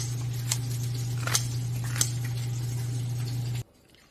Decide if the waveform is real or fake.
real